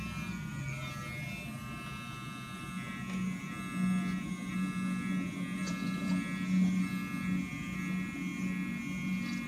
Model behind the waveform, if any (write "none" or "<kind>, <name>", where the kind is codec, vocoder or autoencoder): none